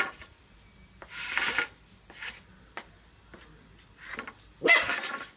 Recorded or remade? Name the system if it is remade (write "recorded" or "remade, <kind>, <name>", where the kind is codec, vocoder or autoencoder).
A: recorded